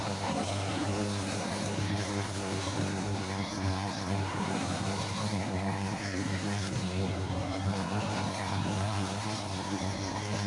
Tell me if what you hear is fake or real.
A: fake